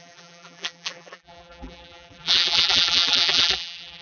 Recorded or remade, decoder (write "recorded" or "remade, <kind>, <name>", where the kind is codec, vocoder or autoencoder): remade, vocoder, BigVGAN v2